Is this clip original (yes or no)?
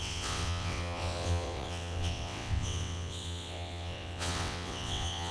no